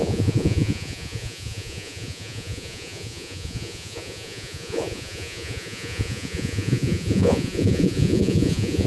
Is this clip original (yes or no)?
no